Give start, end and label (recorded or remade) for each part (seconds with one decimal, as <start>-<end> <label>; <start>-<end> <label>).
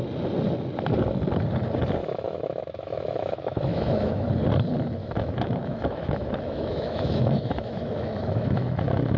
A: 0.0-2.0 recorded; 2.0-4.3 remade; 4.3-5.0 recorded; 5.0-9.2 remade